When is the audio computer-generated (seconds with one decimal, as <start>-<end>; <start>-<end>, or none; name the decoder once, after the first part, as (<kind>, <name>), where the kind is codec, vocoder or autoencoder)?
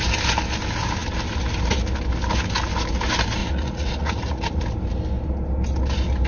3.4-4.6 (vocoder, Vocos)